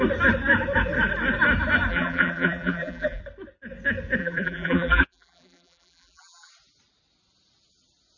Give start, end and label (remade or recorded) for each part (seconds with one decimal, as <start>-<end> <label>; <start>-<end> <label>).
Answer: 0.0-1.9 recorded; 1.9-3.2 remade; 3.2-4.2 recorded; 4.2-6.5 remade; 6.5-8.2 recorded